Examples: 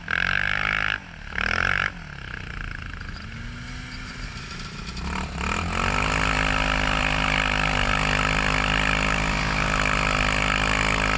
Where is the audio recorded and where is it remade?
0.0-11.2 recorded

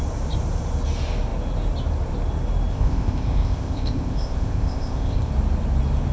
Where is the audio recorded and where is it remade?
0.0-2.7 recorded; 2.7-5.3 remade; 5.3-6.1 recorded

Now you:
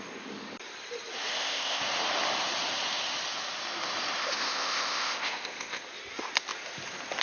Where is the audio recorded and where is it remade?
0.0-1.3 recorded; 1.3-1.8 remade; 1.8-4.2 recorded; 4.2-5.8 remade; 5.8-7.2 recorded